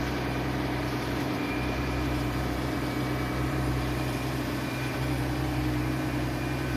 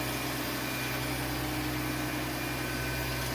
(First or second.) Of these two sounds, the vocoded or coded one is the first